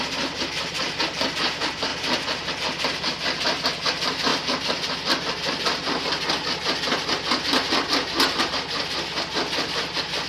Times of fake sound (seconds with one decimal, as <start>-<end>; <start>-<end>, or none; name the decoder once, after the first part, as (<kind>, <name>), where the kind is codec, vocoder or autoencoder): none